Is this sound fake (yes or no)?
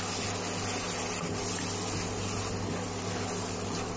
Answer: no